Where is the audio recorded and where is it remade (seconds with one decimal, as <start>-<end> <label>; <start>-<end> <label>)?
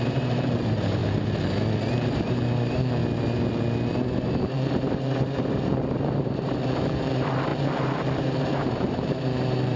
0.0-1.0 remade; 1.0-1.9 recorded; 1.9-3.0 remade; 3.0-4.4 recorded; 4.4-9.8 remade